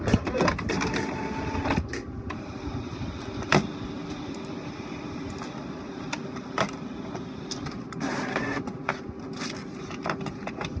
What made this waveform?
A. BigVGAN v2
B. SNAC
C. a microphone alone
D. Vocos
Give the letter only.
C